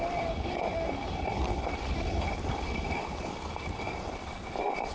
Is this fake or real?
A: fake